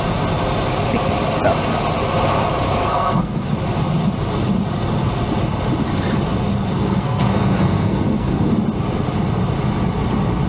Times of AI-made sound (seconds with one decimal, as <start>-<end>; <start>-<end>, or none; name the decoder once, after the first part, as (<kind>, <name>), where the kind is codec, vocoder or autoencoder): 2.8-3.5 (codec, SNAC); 6.7-8.5